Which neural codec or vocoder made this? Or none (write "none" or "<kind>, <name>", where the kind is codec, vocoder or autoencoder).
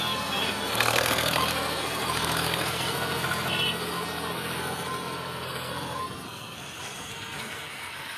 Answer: codec, SNAC